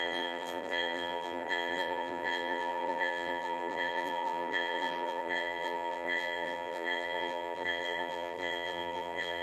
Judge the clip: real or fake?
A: fake